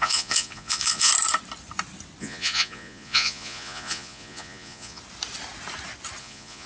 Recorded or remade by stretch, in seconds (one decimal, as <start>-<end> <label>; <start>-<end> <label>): 0.0-1.1 remade; 1.1-2.2 recorded; 2.2-5.0 remade; 5.0-6.2 recorded; 6.2-6.7 remade